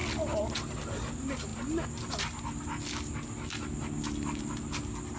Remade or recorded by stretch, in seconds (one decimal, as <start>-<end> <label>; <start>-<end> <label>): 0.0-5.2 recorded